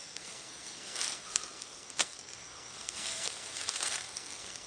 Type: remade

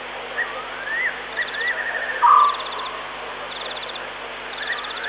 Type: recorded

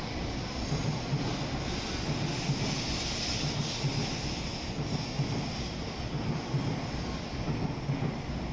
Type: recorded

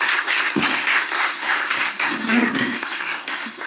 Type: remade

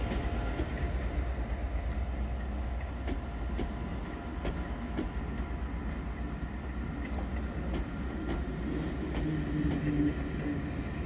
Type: recorded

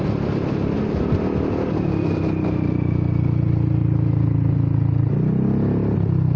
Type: recorded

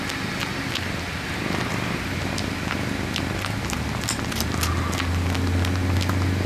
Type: recorded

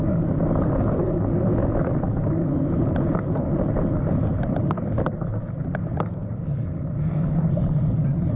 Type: recorded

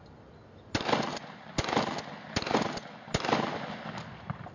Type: recorded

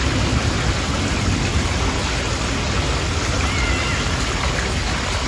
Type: recorded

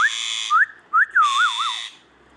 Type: recorded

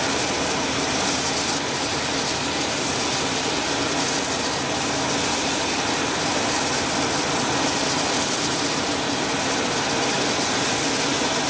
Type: recorded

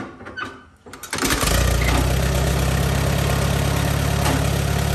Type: recorded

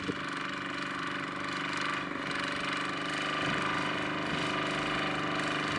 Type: recorded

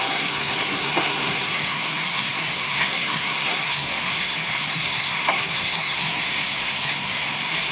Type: remade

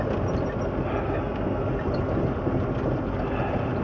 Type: recorded